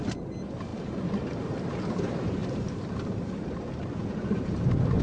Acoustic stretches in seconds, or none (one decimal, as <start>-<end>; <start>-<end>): 0.0-5.0